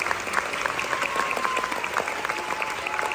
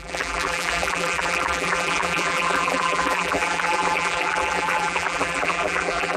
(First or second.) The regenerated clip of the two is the second